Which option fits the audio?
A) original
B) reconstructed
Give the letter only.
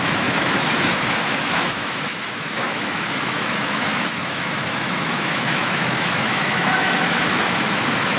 B